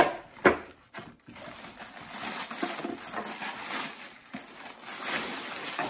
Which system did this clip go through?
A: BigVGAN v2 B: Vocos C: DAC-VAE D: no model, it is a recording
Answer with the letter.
D